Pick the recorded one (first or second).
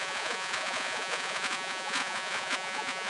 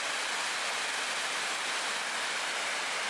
second